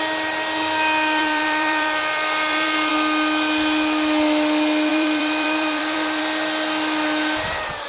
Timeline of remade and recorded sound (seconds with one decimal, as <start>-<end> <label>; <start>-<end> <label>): 0.0-1.2 recorded; 1.2-2.9 remade; 2.9-4.9 recorded; 4.9-6.2 remade; 6.2-7.9 recorded